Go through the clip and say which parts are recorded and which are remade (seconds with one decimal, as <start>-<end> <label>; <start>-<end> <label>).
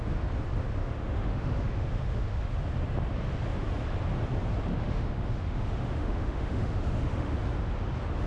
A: 0.0-0.8 recorded; 0.8-2.5 remade; 2.5-4.7 recorded; 4.7-7.3 remade; 7.3-8.3 recorded